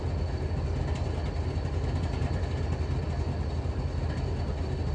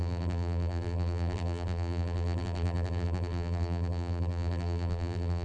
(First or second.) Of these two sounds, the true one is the first